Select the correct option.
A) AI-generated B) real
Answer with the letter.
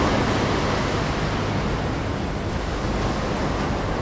B